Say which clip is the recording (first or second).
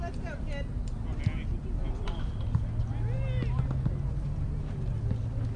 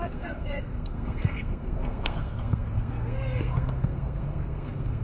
first